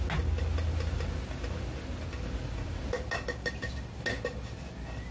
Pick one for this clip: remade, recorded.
recorded